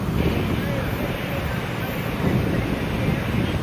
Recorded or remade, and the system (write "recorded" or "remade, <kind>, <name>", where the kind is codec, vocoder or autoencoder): recorded